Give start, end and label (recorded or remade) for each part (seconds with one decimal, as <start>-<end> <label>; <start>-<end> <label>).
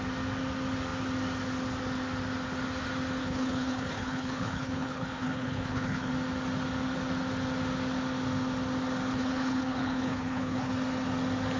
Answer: 0.0-3.2 recorded; 3.2-6.1 remade; 6.1-9.1 recorded; 9.1-10.7 remade; 10.7-11.6 recorded